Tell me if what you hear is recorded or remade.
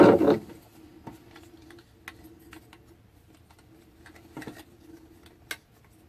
recorded